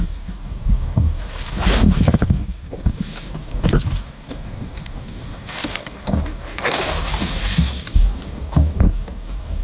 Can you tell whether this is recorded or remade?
remade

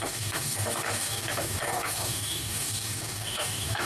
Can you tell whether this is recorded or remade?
remade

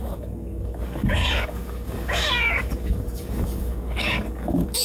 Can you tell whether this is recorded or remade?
remade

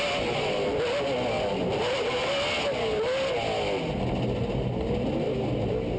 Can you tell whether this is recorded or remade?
recorded